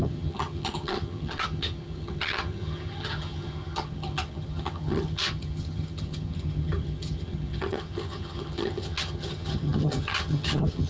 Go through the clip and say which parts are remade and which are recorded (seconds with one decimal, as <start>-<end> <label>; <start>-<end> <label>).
0.0-10.9 remade

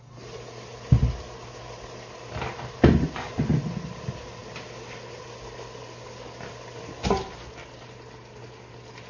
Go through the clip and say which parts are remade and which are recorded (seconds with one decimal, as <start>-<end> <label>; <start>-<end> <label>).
0.0-9.1 recorded